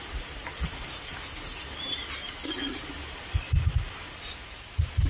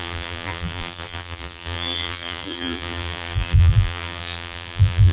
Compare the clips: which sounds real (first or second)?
first